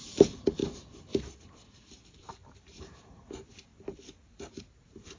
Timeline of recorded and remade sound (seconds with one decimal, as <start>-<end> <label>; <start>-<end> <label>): 0.0-0.6 remade; 0.6-2.2 recorded; 2.2-3.7 remade; 3.7-4.5 recorded; 4.5-5.2 remade